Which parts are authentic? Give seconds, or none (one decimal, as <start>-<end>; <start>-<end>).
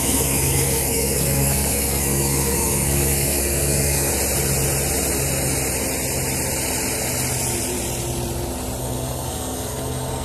4.1-8.8